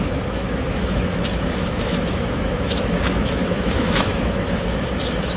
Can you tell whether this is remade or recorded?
remade